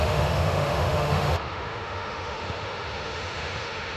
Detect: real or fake fake